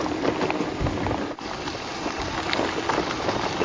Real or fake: real